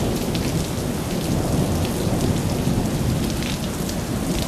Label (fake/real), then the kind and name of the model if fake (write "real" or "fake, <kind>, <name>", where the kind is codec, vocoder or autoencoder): real